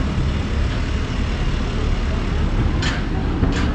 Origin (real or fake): real